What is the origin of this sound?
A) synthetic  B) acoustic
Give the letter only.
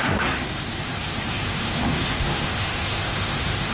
A